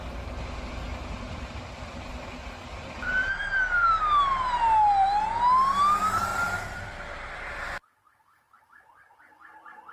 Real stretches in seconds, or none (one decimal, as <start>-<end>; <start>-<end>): 0.0-3.2; 4.0-6.3; 8.6-9.9